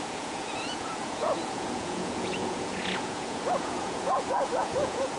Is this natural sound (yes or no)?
no